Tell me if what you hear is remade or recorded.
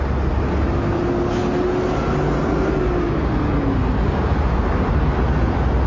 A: recorded